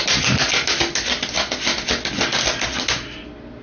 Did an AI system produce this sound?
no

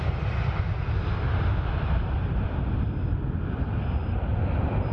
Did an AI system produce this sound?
no